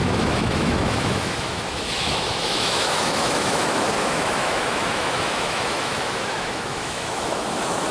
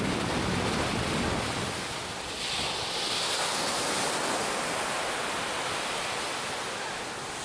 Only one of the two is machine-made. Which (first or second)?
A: first